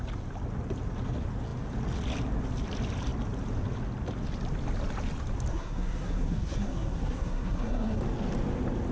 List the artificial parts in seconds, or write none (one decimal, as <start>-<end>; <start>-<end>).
5.5-8.0

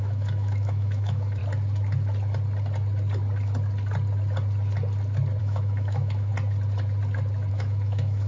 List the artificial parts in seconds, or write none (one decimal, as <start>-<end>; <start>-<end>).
0.0-1.4; 5.4-6.3; 7.5-8.3

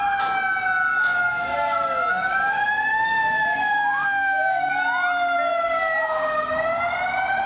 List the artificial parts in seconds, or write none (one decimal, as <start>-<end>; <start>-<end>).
0.9-4.7; 5.5-6.5

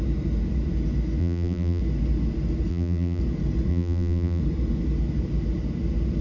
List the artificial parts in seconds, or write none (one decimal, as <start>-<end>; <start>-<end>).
1.2-1.8; 2.7-3.2; 3.7-4.4

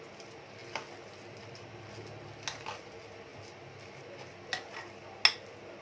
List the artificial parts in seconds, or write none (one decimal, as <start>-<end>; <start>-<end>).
none

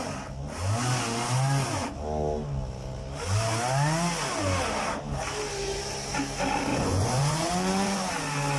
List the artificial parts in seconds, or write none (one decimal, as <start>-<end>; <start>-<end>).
6.7-8.1